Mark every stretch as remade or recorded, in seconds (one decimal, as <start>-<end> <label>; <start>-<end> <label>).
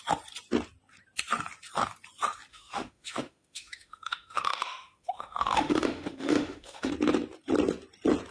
0.0-2.5 recorded; 2.5-6.9 remade; 6.9-8.3 recorded